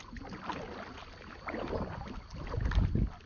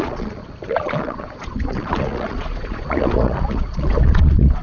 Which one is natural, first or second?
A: first